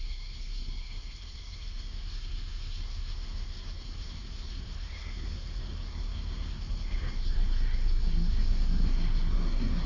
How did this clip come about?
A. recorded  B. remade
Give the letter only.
B